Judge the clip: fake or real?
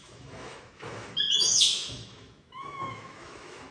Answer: fake